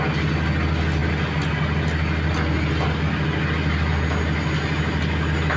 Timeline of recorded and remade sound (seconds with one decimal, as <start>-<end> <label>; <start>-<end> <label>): 0.0-5.6 recorded